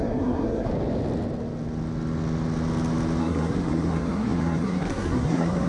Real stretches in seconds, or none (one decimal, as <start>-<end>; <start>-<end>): 0.7-3.2